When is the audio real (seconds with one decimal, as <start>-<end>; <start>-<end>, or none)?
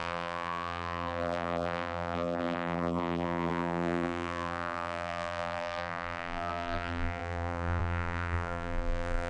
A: none